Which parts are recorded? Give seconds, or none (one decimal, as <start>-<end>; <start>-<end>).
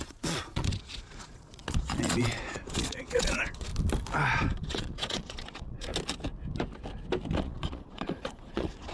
3.7-4.6; 5.9-7.4